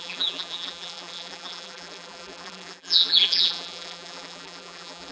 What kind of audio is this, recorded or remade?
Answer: remade